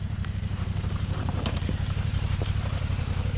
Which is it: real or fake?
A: fake